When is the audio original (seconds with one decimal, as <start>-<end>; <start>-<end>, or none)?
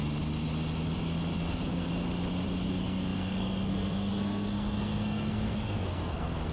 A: 0.0-1.5; 1.9-2.7